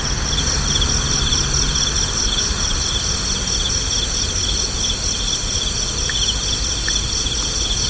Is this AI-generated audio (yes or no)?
no